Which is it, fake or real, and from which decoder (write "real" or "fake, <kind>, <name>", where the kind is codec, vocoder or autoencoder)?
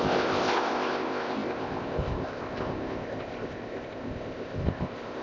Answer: fake, codec, ZipCodec